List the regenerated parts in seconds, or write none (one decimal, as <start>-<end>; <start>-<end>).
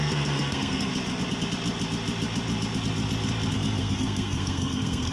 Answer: 0.0-0.9; 3.5-5.1